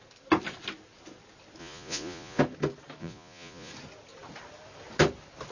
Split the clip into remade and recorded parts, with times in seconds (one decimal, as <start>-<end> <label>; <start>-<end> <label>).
0.0-1.6 recorded; 1.6-2.4 remade; 2.4-3.0 recorded; 3.0-3.7 remade; 3.7-5.5 recorded